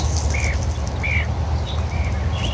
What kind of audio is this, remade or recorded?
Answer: recorded